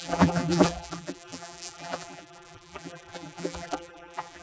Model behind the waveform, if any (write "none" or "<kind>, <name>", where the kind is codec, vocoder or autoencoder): vocoder, BigVGAN v2